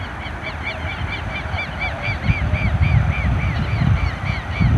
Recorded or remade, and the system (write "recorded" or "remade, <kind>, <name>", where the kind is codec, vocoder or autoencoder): recorded